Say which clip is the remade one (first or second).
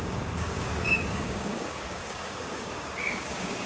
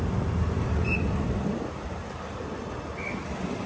first